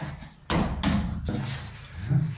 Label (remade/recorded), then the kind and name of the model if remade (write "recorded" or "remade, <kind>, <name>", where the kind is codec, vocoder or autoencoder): recorded